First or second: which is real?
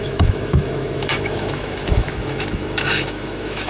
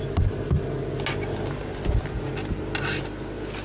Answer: second